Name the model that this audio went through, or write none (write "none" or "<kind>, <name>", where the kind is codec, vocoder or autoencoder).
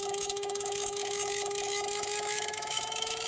autoencoder, DAC-VAE